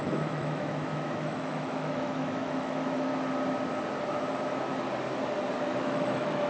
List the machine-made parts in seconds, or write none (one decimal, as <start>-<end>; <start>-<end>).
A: 0.0-3.1; 5.6-6.5